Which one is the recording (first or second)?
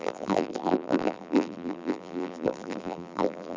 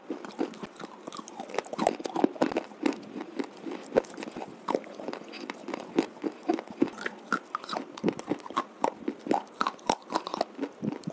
second